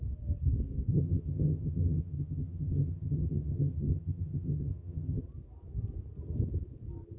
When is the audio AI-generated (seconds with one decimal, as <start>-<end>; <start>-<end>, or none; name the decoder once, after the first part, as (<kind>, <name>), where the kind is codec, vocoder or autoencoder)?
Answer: 0.9-5.2 (vocoder, HiFi-GAN)